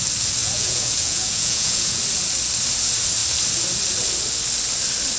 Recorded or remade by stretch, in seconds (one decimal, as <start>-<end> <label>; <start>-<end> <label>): 0.0-0.4 recorded; 0.4-2.0 remade; 2.0-5.2 recorded